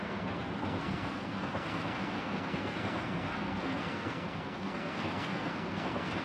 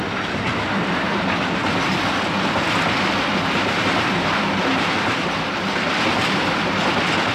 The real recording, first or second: second